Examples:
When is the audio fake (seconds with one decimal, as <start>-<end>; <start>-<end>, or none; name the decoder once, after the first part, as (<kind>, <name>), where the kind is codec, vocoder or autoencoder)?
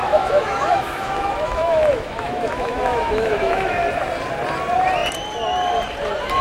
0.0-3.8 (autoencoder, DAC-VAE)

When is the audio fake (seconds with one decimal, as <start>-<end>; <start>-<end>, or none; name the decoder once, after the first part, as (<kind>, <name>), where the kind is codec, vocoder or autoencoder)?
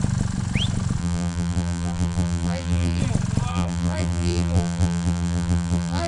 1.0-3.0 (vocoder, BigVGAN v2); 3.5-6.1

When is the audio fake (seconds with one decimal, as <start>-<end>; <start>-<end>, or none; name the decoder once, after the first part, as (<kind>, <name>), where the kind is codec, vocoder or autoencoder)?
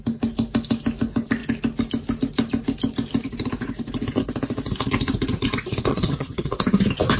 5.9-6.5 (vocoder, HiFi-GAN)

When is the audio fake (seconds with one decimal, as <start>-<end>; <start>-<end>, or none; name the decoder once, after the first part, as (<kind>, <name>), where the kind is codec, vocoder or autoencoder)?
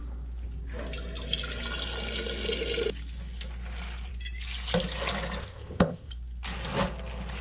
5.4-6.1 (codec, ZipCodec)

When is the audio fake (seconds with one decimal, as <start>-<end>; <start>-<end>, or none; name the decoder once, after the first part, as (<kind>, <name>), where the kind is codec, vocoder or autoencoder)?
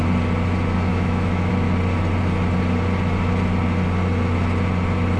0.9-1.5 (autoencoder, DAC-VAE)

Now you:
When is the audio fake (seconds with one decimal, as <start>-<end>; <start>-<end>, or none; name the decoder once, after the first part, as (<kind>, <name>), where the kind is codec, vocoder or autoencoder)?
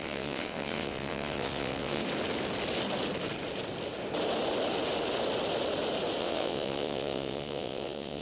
0.0-2.0 (vocoder, WaveNeXt); 6.2-8.2